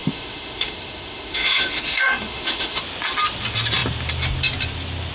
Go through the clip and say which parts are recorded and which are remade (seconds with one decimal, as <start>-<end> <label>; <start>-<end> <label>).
0.0-2.8 remade; 2.8-5.1 recorded